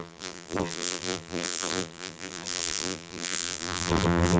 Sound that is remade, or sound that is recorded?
remade